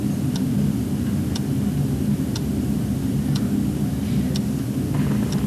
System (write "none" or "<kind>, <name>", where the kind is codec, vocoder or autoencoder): none